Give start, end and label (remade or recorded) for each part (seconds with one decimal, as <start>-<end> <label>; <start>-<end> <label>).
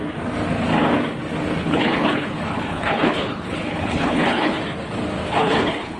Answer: 0.0-1.6 recorded; 1.6-4.6 remade; 4.6-5.3 recorded; 5.3-6.0 remade